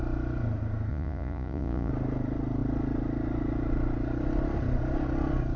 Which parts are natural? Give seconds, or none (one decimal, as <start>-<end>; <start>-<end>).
0.0-0.9; 1.9-5.6